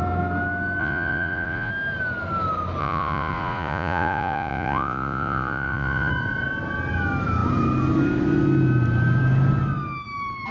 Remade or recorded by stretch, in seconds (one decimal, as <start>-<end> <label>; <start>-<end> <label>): 0.0-0.8 recorded; 0.8-1.7 remade; 1.7-2.8 recorded; 2.8-6.1 remade; 6.1-10.5 recorded